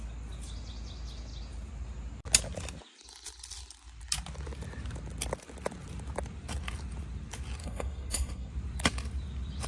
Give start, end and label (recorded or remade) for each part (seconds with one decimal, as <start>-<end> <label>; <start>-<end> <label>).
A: 0.0-7.6 recorded; 7.6-8.5 remade; 8.5-9.7 recorded